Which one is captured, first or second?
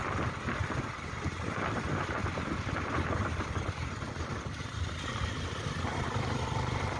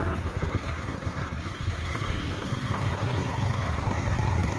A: first